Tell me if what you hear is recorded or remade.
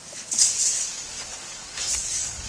remade